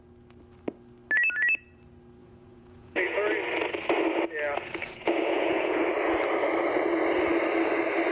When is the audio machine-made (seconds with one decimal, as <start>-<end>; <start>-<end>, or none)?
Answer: 2.2-3.2; 4.8-5.8